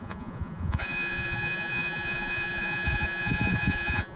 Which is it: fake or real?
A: fake